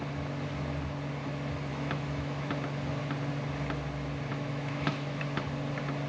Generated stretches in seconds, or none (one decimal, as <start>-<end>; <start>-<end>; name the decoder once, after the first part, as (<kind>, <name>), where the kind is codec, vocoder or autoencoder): 1.7-2.5 (autoencoder, DAC-VAE); 4.3-5.2